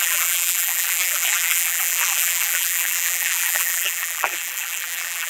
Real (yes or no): no